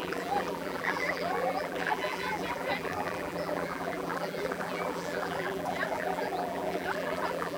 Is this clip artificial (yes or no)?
yes